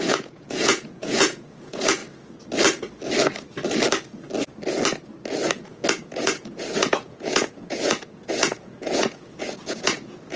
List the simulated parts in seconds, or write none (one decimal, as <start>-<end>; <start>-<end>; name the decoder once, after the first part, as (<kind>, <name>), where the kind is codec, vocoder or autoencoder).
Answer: 0.0-2.0 (vocoder, Vocos); 5.5-10.4